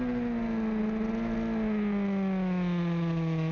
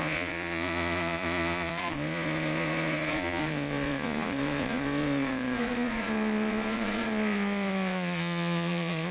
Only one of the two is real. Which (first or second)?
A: first